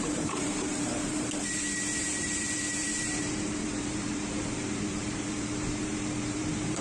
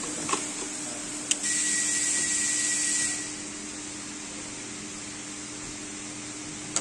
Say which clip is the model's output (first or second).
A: first